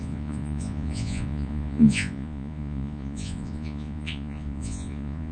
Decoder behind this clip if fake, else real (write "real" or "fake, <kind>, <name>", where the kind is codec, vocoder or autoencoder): fake, vocoder, Vocos